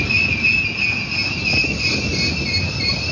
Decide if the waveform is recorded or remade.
recorded